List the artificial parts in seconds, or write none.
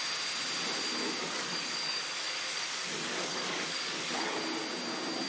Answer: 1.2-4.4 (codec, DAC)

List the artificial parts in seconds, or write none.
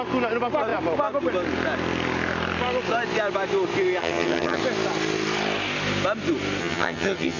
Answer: 4.0-4.6 (vocoder, HiFi-GAN); 6.6-7.4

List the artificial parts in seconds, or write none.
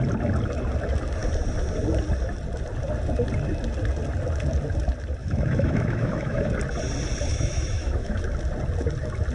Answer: 5.2-6.5 (autoencoder, DAC-VAE); 7.3-8.2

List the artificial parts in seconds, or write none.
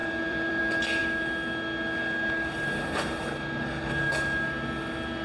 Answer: 0.0-0.6 (vocoder, BigVGAN v2)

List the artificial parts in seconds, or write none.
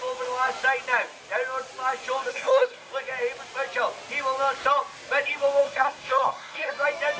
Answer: 2.3-2.9 (codec, SNAC); 5.6-6.7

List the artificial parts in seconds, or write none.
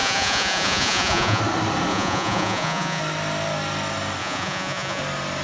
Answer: 0.0-1.4 (vocoder, Vocos); 1.9-3.0; 4.2-5.0